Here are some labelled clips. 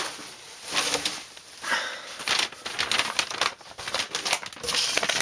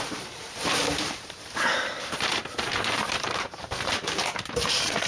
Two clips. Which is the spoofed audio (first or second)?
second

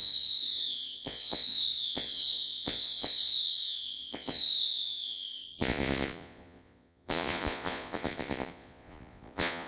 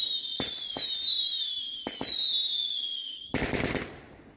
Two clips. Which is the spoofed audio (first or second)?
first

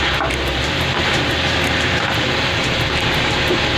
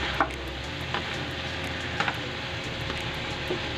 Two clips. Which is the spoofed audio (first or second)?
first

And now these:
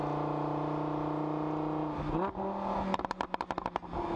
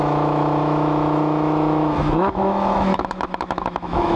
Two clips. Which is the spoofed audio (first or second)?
second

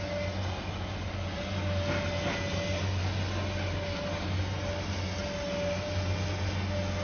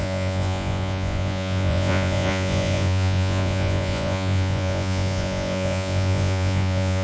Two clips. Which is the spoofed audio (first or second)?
second